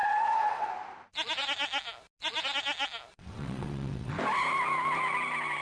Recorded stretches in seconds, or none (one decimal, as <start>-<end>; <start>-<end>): 0.7-3.1; 4.1-5.6